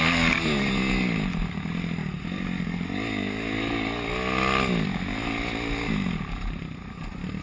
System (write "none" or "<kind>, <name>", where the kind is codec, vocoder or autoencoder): none